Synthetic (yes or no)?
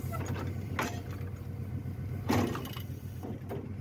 no